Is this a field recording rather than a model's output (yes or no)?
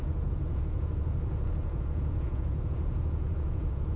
no